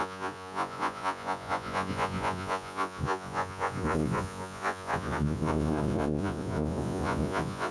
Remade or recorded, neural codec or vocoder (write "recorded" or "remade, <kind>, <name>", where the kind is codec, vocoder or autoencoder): remade, vocoder, Vocos